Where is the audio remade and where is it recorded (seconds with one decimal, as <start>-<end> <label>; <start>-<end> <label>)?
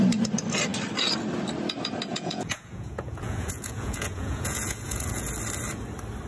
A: 0.0-2.1 recorded; 2.1-5.3 remade; 5.3-6.3 recorded